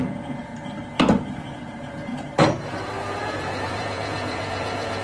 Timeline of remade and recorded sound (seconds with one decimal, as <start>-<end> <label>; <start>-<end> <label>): 0.0-0.5 remade; 0.5-1.4 recorded; 1.4-2.1 remade; 2.1-3.2 recorded; 3.2-5.0 remade